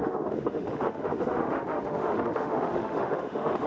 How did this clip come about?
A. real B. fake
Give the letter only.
B